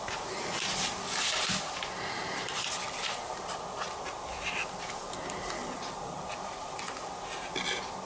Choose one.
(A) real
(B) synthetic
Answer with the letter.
A